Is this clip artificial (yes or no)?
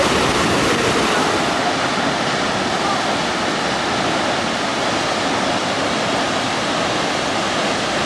no